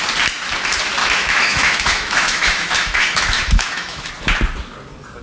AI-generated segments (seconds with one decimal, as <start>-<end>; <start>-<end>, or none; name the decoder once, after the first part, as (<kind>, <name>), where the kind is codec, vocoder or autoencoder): 1.0-4.1 (autoencoder, DAC-VAE)